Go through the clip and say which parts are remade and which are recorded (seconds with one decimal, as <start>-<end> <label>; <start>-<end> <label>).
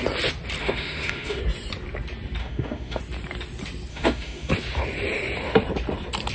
0.0-0.6 recorded; 0.6-1.4 remade; 1.4-2.4 recorded; 2.4-3.0 remade; 3.0-3.9 recorded; 3.9-4.5 remade; 4.5-6.3 recorded